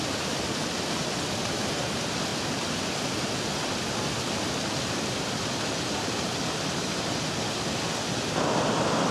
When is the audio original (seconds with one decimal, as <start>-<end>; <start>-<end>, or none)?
0.0-9.1